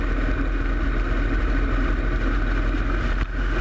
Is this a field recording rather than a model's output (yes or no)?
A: yes